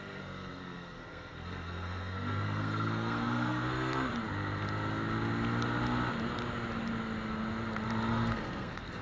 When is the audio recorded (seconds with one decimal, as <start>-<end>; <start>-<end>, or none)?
4.1-8.1